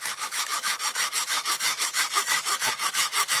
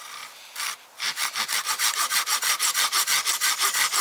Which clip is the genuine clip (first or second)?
second